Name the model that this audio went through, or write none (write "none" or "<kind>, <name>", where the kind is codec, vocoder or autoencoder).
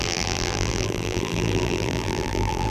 vocoder, BigVGAN v2